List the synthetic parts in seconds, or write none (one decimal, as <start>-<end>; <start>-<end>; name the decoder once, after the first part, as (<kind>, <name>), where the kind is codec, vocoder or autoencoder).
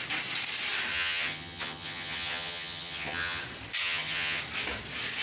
0.9-3.4 (vocoder, HiFi-GAN); 3.8-4.4